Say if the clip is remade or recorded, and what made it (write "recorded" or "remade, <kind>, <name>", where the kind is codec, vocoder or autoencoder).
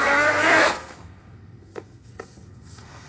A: remade, codec, SNAC